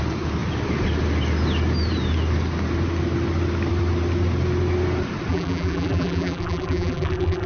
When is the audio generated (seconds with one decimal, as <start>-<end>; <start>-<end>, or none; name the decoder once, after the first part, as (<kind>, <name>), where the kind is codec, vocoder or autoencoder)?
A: 5.3-7.5 (vocoder, BigVGAN v2)